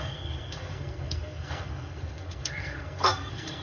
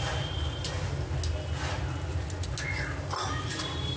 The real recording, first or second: second